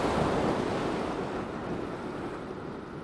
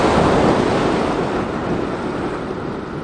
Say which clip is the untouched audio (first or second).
first